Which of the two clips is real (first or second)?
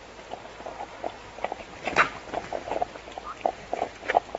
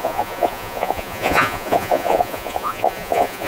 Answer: first